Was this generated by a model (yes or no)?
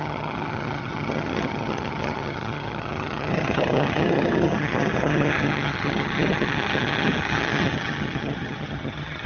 yes